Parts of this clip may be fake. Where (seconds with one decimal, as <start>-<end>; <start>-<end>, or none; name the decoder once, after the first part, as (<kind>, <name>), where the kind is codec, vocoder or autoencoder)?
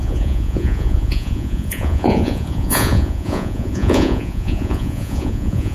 0.0-5.7 (vocoder, Vocos)